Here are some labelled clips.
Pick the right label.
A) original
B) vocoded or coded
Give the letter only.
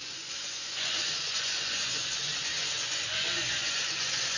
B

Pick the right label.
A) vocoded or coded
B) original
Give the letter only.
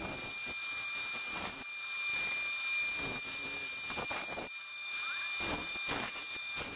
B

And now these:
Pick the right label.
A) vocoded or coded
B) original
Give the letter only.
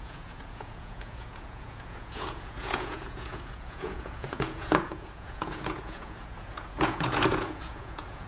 A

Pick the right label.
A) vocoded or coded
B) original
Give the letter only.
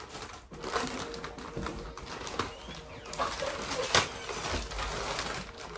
B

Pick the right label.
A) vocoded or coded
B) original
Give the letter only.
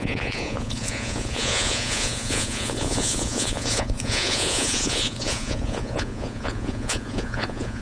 A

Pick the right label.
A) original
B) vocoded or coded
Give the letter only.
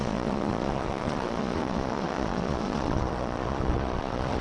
B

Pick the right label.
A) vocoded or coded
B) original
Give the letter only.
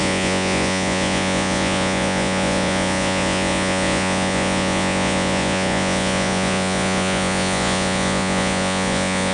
A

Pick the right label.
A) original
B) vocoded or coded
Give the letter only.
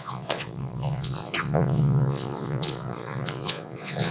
B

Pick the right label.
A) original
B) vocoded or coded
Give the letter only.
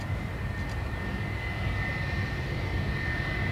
A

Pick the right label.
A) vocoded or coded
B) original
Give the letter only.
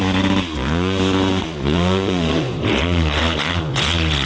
A